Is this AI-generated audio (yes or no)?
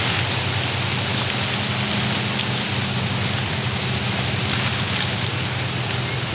no